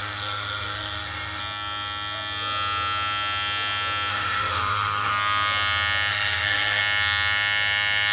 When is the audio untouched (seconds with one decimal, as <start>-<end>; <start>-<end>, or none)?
1.4-4.1; 5.1-6.1; 6.8-8.1